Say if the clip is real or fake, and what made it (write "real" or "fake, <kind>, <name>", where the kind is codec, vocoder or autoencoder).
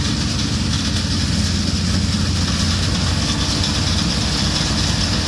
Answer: real